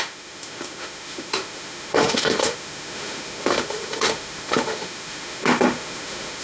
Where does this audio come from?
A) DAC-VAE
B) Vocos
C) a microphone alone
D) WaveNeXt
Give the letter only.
A